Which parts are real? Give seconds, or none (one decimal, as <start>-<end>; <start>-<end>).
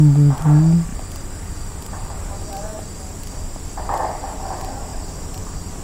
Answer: 0.0-0.9; 4.4-4.9